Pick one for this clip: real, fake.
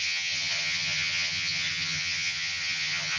fake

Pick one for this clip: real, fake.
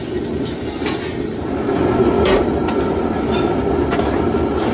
real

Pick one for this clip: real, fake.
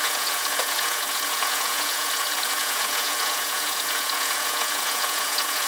fake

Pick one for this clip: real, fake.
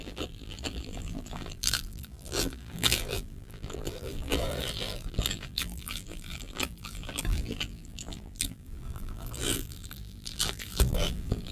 fake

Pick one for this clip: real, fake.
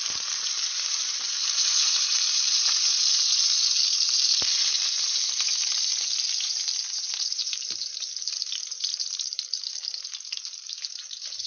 fake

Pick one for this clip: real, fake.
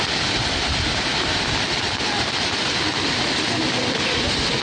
real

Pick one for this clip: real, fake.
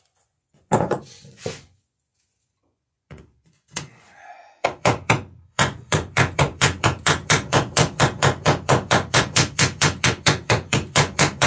fake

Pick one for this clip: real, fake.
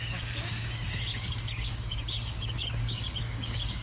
fake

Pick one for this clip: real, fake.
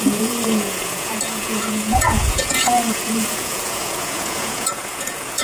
fake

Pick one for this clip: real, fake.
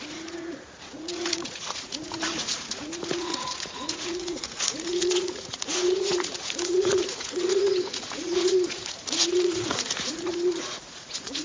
fake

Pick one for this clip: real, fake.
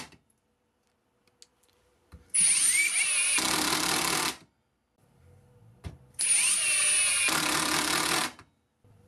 real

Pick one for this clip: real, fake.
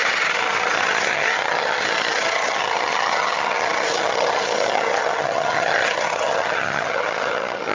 fake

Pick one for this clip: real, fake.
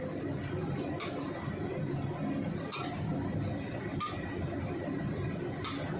real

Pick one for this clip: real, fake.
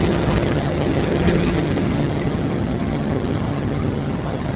fake